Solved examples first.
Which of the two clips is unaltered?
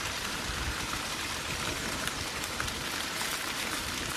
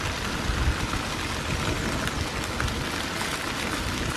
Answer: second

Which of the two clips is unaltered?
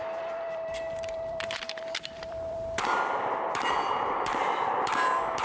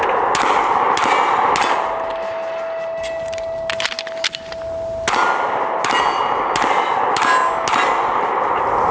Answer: second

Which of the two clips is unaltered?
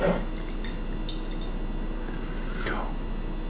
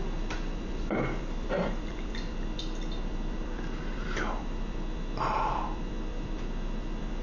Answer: first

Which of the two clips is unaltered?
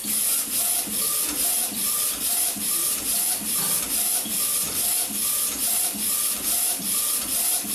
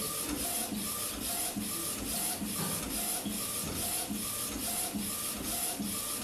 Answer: second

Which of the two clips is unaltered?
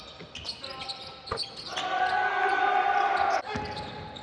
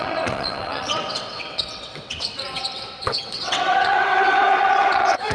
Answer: first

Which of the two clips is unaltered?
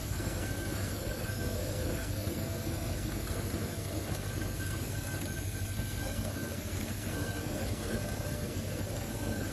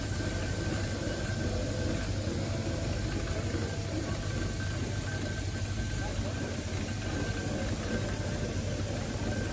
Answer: second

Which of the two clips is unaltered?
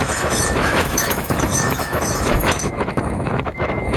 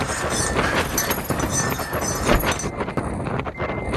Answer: second